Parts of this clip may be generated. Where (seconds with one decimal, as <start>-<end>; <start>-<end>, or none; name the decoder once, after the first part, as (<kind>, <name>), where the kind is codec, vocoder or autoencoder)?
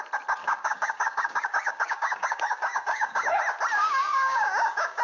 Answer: 0.4-3.4 (codec, DAC); 3.8-5.0